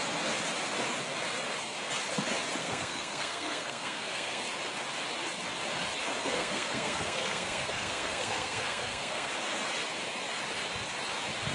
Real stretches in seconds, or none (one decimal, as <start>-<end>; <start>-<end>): 0.0-2.6; 4.4-6.2; 9.3-11.5